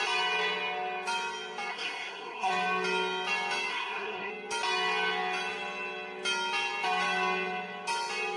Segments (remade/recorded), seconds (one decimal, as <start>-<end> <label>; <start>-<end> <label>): 0.0-1.7 recorded; 1.7-2.5 remade; 2.5-3.7 recorded; 3.7-4.3 remade; 4.3-8.4 recorded